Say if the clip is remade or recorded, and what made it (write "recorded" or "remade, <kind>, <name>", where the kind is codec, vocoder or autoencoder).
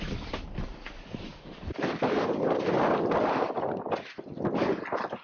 recorded